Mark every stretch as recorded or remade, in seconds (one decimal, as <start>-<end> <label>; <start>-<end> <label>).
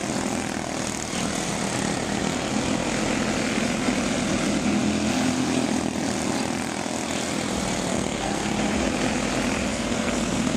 0.0-7.9 recorded; 7.9-8.5 remade; 8.5-9.7 recorded; 9.7-10.6 remade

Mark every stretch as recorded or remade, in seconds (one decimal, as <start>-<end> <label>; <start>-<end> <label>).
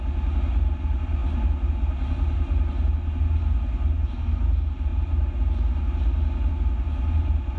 0.0-7.6 recorded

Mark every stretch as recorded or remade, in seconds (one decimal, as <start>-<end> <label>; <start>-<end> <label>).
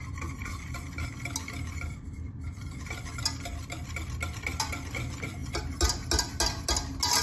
0.0-7.2 recorded